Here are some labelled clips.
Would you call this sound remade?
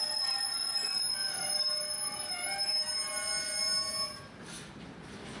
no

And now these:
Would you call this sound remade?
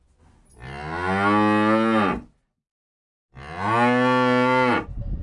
no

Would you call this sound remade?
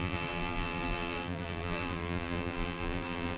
yes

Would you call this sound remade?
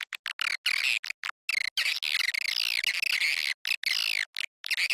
no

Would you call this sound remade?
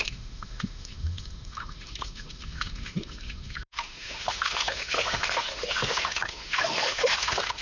yes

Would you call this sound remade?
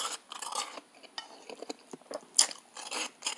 no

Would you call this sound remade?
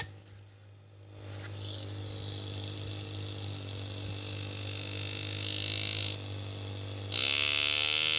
no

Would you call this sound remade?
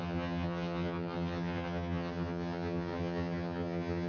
yes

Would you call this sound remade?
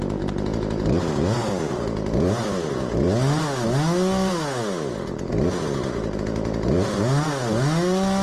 no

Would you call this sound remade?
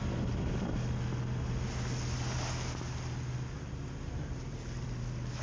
no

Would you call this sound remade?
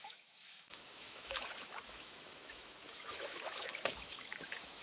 yes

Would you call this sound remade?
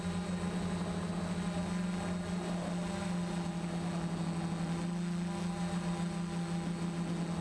no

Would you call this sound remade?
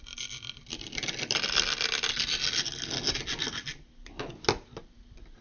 no